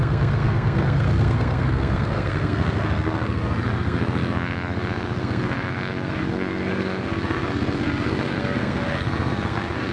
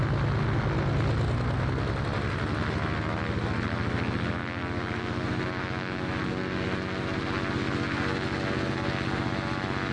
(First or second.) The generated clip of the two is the first